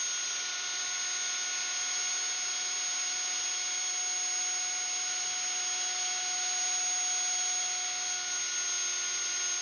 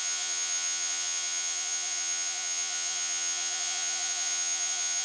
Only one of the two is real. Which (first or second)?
first